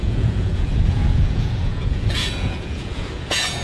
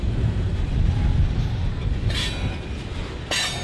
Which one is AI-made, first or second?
first